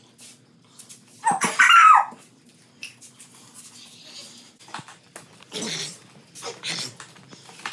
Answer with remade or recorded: recorded